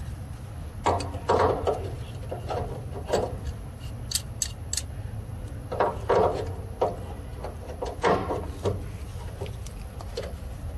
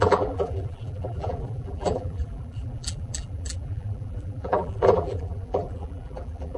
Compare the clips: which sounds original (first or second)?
first